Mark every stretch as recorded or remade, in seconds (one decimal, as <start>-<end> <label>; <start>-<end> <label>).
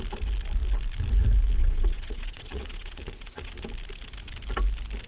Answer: 0.0-1.6 recorded; 1.6-3.5 remade; 3.5-5.1 recorded